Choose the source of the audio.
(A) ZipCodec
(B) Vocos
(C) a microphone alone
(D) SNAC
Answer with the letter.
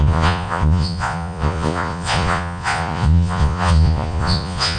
B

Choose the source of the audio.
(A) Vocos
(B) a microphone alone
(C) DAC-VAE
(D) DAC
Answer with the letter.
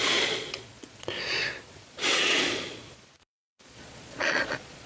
A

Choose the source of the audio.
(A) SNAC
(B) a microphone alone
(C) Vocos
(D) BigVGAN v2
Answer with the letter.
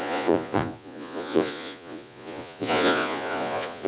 C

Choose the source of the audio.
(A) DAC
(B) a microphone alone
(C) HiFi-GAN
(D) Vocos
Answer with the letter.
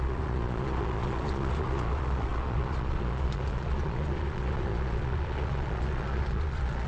D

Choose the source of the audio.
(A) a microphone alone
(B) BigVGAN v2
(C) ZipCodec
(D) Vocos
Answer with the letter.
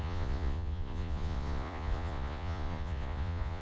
D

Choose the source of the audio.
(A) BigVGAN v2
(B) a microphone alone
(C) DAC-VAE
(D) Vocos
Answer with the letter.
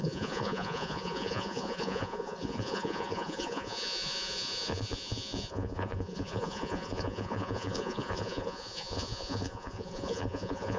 D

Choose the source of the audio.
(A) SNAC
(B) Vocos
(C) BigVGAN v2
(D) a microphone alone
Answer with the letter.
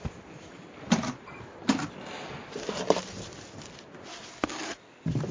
D